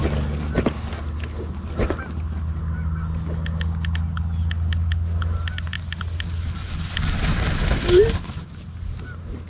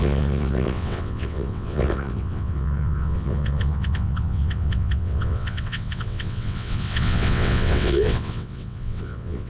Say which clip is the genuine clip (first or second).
first